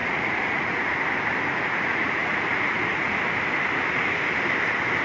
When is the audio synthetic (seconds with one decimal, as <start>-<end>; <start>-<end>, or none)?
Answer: 0.0-0.8; 1.5-3.2